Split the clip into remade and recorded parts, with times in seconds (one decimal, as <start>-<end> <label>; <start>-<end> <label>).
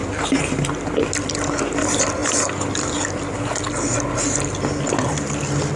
0.0-5.8 recorded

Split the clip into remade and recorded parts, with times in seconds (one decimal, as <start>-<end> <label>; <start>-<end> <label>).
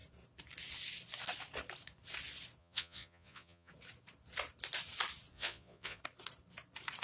0.0-2.6 recorded; 2.6-3.7 remade; 3.7-5.3 recorded; 5.3-6.0 remade; 6.0-7.0 recorded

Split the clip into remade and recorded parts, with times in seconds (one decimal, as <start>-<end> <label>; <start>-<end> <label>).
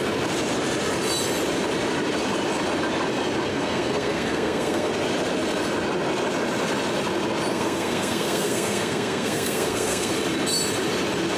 0.0-3.5 recorded; 3.5-4.9 remade; 4.9-7.5 recorded; 7.5-10.1 remade; 10.1-11.4 recorded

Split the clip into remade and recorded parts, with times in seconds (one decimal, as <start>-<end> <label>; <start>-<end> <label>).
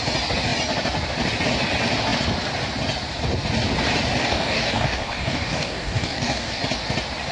0.0-4.2 recorded; 4.2-6.6 remade; 6.6-7.3 recorded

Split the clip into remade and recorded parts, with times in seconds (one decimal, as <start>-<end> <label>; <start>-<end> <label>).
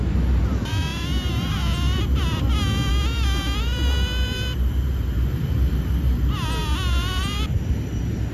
0.0-8.3 recorded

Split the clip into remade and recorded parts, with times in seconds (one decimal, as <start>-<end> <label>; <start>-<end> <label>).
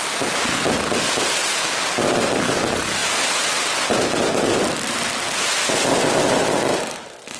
0.0-7.4 recorded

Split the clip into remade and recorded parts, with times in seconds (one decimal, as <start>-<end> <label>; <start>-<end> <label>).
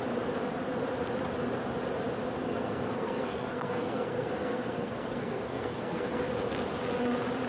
0.0-2.4 recorded; 2.4-6.2 remade; 6.2-7.5 recorded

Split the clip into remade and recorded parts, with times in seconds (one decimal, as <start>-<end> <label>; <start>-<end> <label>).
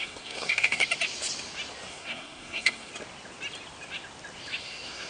0.0-0.8 remade; 0.8-1.9 recorded; 1.9-2.9 remade; 2.9-4.6 recorded; 4.6-5.1 remade